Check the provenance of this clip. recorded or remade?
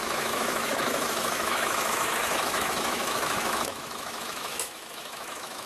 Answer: remade